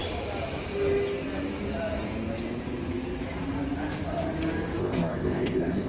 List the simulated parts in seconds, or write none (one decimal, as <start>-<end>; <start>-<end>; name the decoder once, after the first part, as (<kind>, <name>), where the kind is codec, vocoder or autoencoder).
4.8-5.9 (codec, ZipCodec)